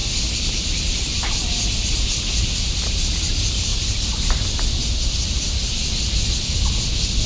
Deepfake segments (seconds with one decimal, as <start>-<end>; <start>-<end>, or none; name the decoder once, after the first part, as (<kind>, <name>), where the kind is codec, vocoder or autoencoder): 5.6-6.3 (vocoder, BigVGAN v2)